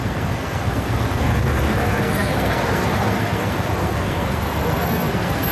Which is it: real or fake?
fake